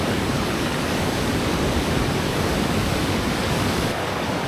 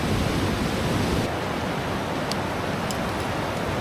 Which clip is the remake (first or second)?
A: first